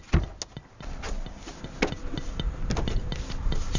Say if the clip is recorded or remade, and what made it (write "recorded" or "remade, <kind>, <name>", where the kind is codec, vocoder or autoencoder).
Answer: recorded